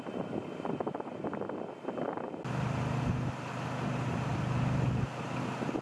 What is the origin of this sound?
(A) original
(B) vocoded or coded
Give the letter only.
A